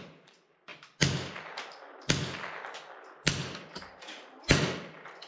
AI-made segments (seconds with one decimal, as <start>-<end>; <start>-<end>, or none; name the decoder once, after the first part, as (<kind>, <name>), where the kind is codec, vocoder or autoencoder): none

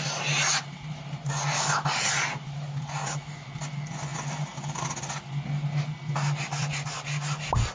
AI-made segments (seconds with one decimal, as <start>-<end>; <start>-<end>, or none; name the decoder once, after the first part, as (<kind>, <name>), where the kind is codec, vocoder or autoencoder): none

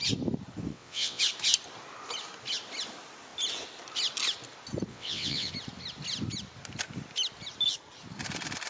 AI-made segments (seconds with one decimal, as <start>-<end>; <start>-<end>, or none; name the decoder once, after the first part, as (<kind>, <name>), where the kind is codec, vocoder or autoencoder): 0.7-1.2 (vocoder, WaveNeXt); 4.9-5.5

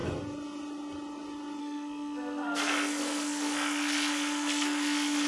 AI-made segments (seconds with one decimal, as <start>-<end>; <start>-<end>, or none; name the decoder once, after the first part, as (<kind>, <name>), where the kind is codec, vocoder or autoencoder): 1.6-5.3 (codec, SNAC)

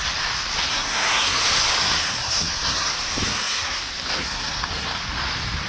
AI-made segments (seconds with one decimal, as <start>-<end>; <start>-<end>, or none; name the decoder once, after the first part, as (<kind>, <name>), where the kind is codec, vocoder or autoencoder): 0.7-1.4 (codec, SNAC); 1.8-2.9; 3.3-3.8; 4.2-5.0

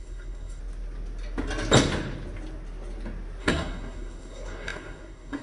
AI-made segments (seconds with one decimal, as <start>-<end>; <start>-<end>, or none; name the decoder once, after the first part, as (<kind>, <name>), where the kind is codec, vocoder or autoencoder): 0.0-0.6 (codec, SNAC); 3.4-5.4

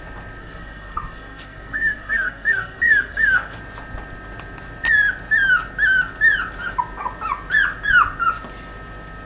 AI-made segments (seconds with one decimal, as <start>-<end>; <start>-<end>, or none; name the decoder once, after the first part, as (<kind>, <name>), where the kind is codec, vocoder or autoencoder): 0.4-3.6 (codec, SNAC)